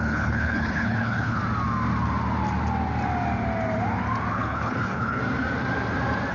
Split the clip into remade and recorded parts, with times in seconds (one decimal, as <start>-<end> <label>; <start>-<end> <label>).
0.0-1.4 remade; 1.4-4.3 recorded; 4.3-5.2 remade; 5.2-6.3 recorded